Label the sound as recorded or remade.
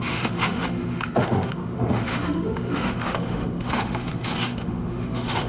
remade